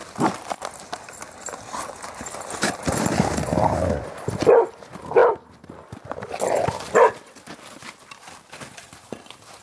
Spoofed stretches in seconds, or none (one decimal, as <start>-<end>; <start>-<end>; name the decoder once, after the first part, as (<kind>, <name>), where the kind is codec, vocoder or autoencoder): 0.0-1.6 (vocoder, BigVGAN v2)